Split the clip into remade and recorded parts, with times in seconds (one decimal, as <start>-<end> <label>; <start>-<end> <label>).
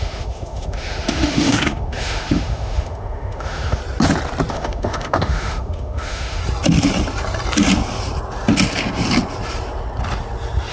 0.0-3.8 remade; 3.8-4.5 recorded; 4.5-6.4 remade; 6.4-10.7 recorded